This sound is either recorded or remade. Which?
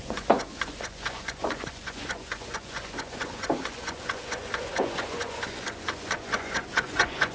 remade